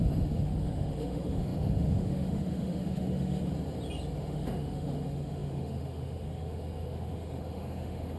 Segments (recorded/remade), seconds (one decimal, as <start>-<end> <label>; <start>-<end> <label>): 0.0-3.5 remade; 3.5-4.2 recorded; 4.2-8.2 remade